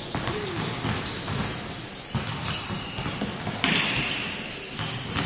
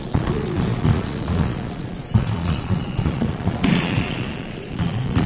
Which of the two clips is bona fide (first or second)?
first